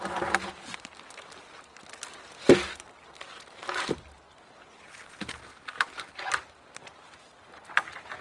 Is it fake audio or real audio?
real